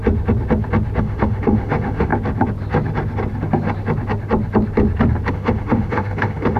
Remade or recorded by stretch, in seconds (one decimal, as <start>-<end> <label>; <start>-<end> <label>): 0.0-1.0 recorded; 1.0-2.1 remade; 2.1-5.3 recorded; 5.3-6.6 remade